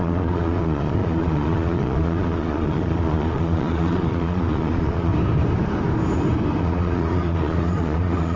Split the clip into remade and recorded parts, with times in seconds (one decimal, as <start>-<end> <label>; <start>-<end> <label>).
0.0-5.1 remade; 5.1-6.6 recorded; 6.6-8.4 remade